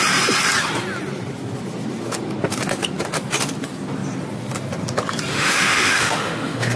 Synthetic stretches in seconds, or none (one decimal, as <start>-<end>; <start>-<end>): 5.3-6.8